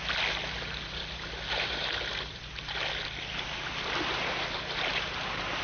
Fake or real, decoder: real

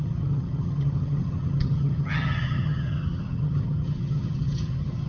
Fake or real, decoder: fake, vocoder, HiFi-GAN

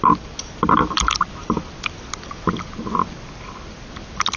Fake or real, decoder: real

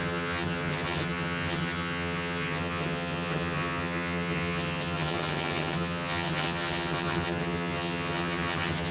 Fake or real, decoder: fake, vocoder, HiFi-GAN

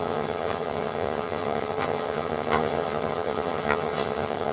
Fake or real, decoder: fake, vocoder, HiFi-GAN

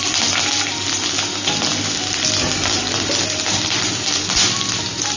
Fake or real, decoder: real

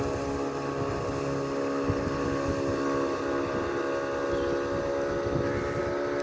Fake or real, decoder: real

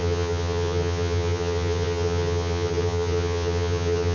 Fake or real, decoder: fake, vocoder, HiFi-GAN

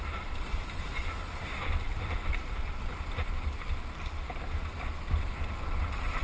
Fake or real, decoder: real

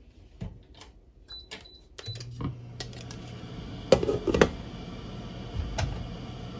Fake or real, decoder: real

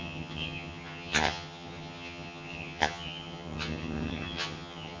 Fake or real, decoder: fake, vocoder, HiFi-GAN